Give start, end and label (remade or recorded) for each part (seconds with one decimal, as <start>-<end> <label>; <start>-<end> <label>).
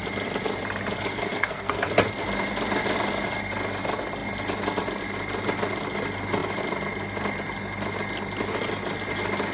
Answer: 0.0-1.1 recorded; 1.1-1.9 remade; 1.9-9.5 recorded